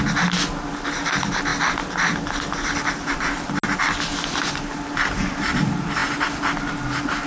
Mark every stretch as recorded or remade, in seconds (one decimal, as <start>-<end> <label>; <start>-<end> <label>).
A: 0.0-7.3 recorded